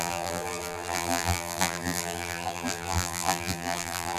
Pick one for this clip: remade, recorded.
remade